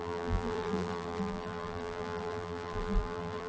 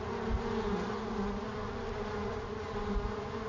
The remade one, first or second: first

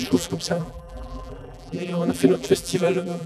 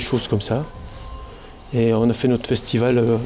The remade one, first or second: first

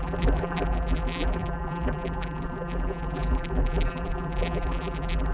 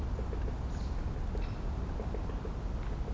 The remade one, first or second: first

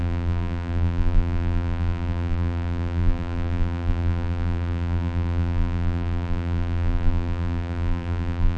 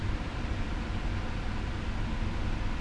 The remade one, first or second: first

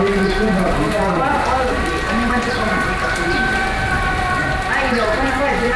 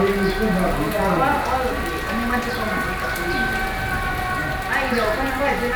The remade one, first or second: first